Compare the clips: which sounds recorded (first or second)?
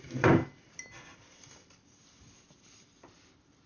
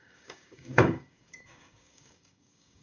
first